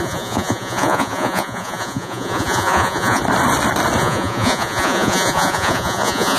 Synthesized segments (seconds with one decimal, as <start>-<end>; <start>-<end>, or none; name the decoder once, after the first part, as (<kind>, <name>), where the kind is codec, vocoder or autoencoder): 0.0-3.2 (vocoder, Vocos); 4.0-6.4